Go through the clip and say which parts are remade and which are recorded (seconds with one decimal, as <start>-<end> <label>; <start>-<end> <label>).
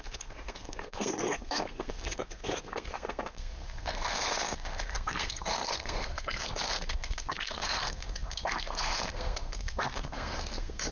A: 0.0-10.9 remade